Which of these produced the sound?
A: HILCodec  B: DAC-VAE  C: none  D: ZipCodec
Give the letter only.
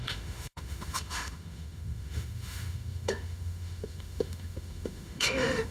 B